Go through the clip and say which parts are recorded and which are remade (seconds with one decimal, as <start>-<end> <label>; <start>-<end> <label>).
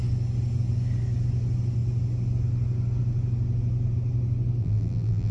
0.0-4.6 recorded; 4.6-5.3 remade